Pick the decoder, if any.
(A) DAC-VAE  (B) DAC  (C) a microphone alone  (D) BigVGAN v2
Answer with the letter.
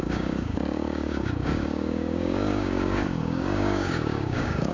B